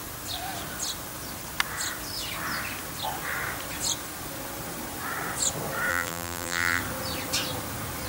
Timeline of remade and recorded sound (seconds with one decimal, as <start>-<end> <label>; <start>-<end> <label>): 0.0-5.9 recorded; 5.9-6.8 remade; 6.8-8.1 recorded